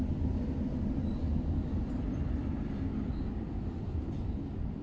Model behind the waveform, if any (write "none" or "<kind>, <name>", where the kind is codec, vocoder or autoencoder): none